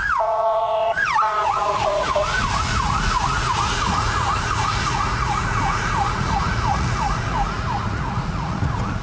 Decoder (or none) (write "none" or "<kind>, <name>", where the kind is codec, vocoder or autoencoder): vocoder, Vocos